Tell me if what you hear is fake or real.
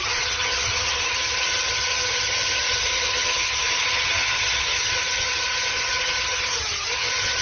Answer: fake